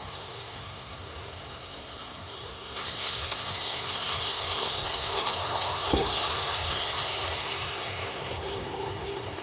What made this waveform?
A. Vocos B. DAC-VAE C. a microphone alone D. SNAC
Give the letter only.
D